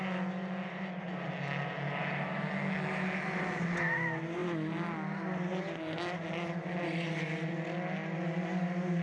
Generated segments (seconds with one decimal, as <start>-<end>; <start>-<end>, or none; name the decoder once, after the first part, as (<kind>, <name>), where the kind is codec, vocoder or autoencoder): none